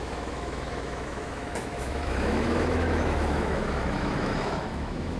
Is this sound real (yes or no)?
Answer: no